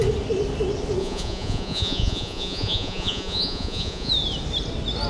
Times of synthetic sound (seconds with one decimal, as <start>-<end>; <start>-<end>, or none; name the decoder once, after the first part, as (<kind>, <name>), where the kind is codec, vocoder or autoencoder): 1.0-4.1 (vocoder, Vocos)

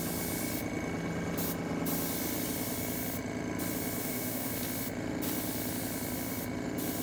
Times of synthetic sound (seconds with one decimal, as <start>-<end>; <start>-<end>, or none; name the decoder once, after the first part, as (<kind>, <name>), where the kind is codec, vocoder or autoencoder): 4.0-4.5 (autoencoder, DAC-VAE)

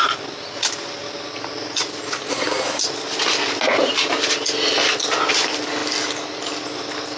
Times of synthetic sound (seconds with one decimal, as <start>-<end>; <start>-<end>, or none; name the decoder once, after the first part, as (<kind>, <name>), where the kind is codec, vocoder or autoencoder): 2.3-2.8 (codec, SNAC)

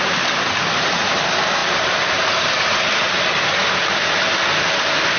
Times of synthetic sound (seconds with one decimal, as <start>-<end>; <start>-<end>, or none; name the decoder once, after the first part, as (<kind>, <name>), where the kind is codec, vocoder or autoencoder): 0.6-1.1 (vocoder, BigVGAN v2); 1.6-2.5

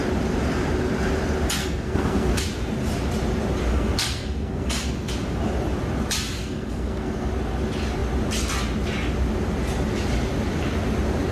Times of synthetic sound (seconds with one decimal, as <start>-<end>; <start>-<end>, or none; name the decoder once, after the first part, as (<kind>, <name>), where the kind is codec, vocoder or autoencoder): 1.6-2.3 (codec, SNAC); 3.7-5.1; 6.4-7.3

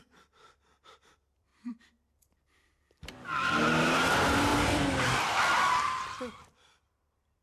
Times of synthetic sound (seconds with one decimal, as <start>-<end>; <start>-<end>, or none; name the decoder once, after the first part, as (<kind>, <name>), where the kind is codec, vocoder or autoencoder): 0.0-7.4 (vocoder, BigVGAN v2)

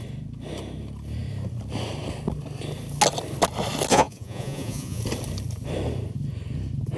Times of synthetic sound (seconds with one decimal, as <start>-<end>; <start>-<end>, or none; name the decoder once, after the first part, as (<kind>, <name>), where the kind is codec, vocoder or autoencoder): 3.9-5.0 (vocoder, Vocos)